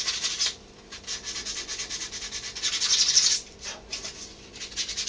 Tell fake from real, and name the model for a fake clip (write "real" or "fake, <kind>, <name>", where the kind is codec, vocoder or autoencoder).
real